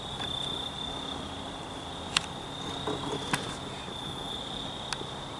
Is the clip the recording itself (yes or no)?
yes